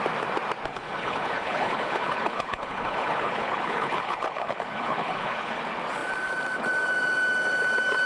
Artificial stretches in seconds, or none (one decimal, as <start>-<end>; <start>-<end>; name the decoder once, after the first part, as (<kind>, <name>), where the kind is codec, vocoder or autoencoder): 0.7-5.6 (codec, HILCodec)